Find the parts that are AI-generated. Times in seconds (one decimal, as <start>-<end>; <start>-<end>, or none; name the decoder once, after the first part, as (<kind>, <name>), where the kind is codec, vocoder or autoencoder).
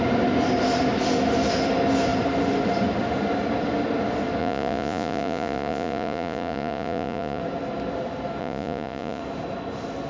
4.4-7.4 (vocoder, Vocos); 8.4-9.2